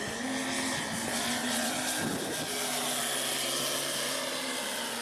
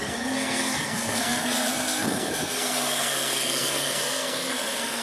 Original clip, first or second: first